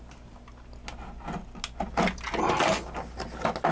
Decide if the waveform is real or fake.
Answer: real